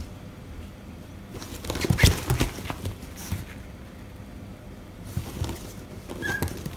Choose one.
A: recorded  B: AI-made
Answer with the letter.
A